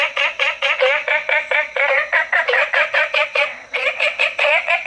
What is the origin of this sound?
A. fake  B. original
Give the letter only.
A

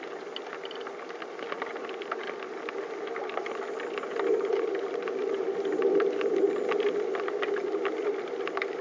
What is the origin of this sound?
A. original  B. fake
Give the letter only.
A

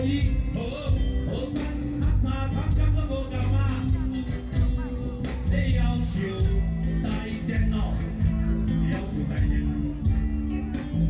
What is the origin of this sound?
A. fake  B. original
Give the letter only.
B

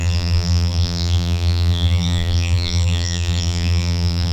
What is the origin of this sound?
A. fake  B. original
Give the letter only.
A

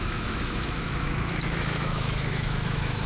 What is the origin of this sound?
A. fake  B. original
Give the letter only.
A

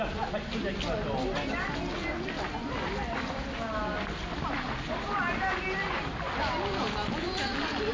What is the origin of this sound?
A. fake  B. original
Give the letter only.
B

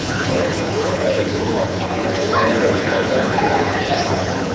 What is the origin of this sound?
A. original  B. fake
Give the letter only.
B